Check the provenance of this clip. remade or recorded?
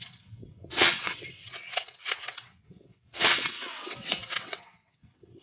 remade